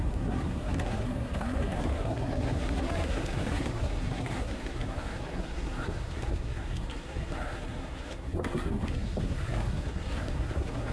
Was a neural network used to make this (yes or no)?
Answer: yes